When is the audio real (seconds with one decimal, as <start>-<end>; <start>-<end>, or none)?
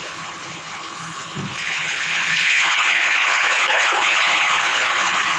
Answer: none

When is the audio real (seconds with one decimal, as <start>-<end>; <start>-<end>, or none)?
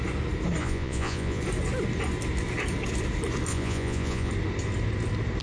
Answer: 0.0-0.6; 1.4-3.5; 4.3-5.4